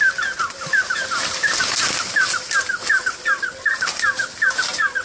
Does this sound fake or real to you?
real